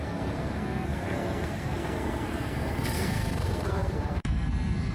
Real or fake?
fake